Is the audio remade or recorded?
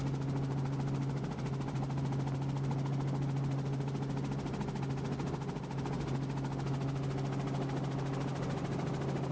recorded